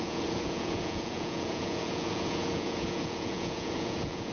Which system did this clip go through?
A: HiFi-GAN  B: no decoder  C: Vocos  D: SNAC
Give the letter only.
C